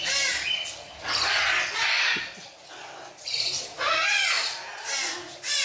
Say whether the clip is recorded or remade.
recorded